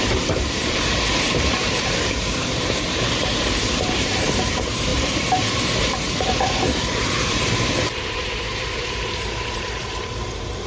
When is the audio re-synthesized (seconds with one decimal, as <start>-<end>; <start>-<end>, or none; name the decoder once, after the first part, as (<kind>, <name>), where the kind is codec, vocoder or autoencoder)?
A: 0.0-10.7 (vocoder, BigVGAN v2)